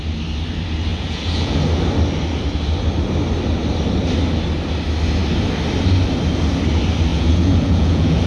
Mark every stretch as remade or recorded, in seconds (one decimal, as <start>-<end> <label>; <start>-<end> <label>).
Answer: 0.0-0.9 recorded; 0.9-1.6 remade; 1.6-7.1 recorded; 7.1-8.3 remade

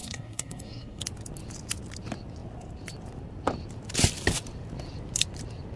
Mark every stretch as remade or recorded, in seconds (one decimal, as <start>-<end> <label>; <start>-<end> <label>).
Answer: 0.0-1.0 remade; 1.0-5.8 recorded

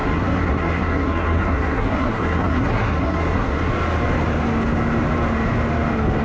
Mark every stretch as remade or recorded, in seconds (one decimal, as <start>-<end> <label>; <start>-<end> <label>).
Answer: 0.0-3.7 remade; 3.7-6.2 recorded

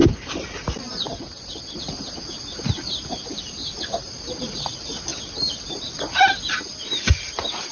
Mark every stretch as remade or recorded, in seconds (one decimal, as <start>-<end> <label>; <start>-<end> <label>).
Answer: 0.0-7.7 recorded

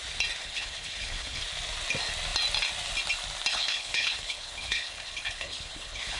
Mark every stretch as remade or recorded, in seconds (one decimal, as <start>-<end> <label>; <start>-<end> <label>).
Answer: 0.0-0.4 recorded; 0.4-1.4 remade; 1.4-3.5 recorded; 3.5-6.2 remade

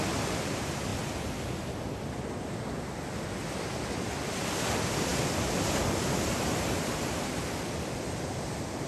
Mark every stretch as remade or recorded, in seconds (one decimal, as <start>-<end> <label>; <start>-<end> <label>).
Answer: 0.0-8.9 recorded

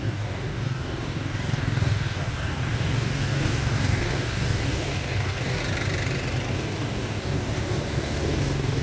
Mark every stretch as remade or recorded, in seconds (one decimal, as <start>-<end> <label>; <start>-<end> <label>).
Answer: 0.0-5.6 remade; 5.6-6.5 recorded; 6.5-8.8 remade